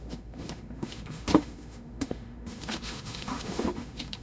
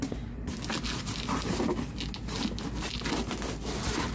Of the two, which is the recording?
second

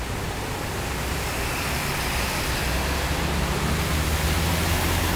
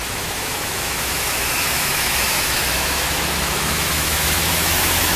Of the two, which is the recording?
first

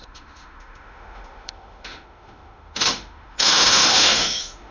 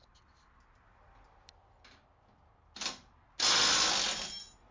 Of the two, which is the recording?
second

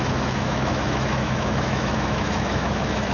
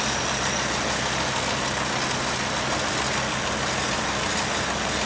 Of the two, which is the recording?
second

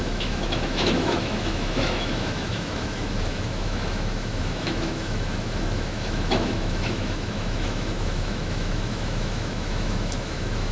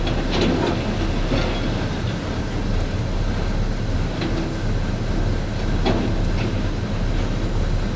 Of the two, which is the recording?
second